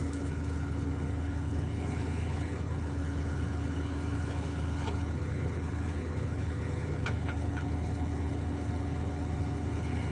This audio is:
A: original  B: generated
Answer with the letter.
B